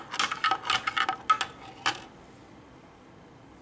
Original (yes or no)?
yes